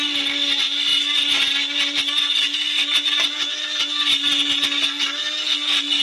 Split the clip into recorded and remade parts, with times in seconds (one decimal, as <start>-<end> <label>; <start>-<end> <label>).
0.0-6.0 recorded